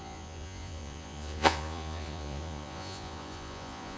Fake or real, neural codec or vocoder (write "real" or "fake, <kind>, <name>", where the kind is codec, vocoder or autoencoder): fake, vocoder, Vocos